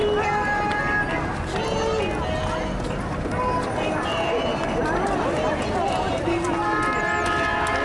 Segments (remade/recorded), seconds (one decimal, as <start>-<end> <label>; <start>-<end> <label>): 0.0-7.8 recorded